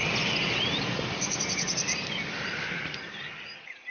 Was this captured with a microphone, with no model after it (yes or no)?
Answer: yes